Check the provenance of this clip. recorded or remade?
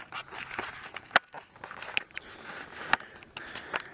recorded